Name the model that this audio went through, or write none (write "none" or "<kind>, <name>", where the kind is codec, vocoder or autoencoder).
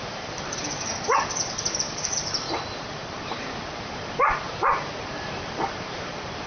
vocoder, BigVGAN v2